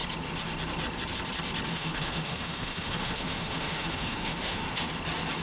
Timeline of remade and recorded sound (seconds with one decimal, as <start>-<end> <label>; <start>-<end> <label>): 0.0-1.7 recorded; 1.7-4.9 remade; 4.9-5.4 recorded

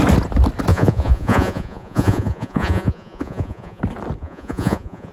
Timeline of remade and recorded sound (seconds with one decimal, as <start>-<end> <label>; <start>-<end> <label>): 0.0-0.7 recorded; 0.7-3.8 remade; 3.8-4.2 recorded; 4.2-5.1 remade

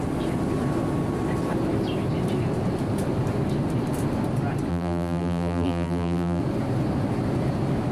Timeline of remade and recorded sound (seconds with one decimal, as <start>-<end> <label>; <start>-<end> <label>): 0.0-4.7 recorded; 4.7-6.4 remade; 6.4-7.9 recorded

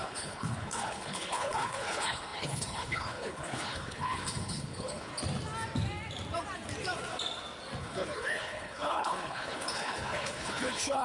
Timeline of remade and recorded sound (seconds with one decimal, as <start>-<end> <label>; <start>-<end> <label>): 0.0-5.1 remade; 5.1-7.8 recorded; 7.8-11.0 remade

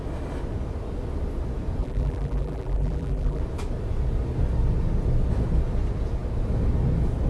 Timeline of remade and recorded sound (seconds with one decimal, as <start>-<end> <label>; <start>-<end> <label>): 0.0-1.8 recorded; 1.8-3.4 remade; 3.4-7.3 recorded